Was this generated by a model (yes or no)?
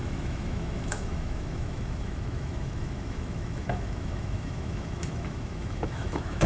yes